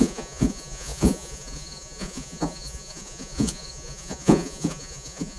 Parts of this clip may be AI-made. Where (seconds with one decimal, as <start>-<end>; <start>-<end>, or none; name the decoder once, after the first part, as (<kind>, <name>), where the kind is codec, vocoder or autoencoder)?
0.0-5.4 (vocoder, Vocos)